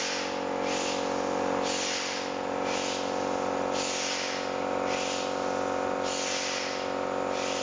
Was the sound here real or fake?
real